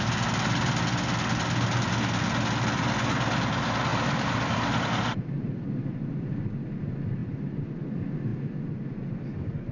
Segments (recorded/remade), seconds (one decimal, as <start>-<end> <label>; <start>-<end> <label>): 0.0-3.9 recorded; 3.9-6.1 remade; 6.1-7.2 recorded; 7.2-7.7 remade; 7.7-9.7 recorded